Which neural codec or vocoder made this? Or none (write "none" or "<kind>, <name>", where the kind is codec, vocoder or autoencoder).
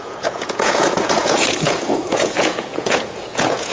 vocoder, Vocos